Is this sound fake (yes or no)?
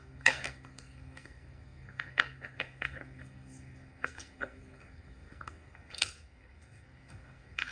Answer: yes